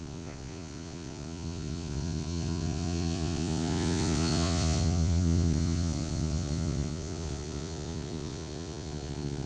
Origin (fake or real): fake